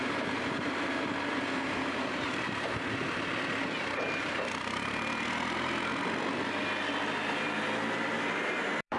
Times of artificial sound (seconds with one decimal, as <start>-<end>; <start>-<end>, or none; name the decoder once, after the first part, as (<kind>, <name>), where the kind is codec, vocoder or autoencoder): 0.0-3.3 (vocoder, BigVGAN v2); 8.4-9.0